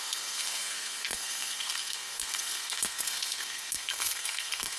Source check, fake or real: fake